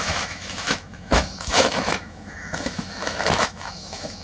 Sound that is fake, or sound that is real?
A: fake